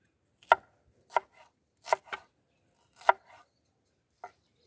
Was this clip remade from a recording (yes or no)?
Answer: no